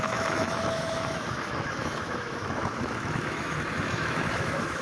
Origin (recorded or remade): remade